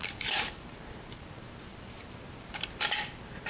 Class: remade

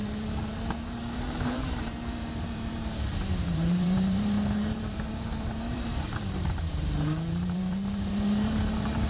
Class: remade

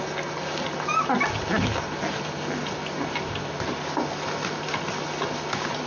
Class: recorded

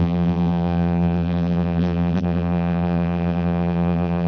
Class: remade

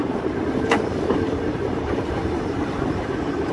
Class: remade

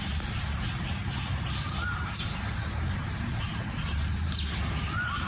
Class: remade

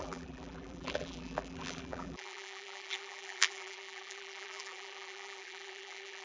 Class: remade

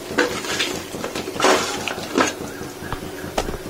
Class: recorded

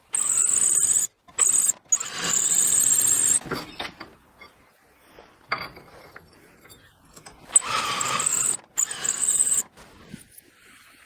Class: recorded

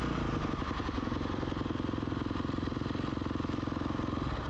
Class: recorded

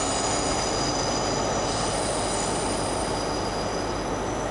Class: recorded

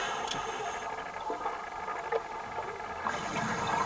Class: recorded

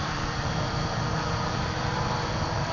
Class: remade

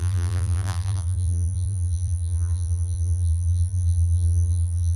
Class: remade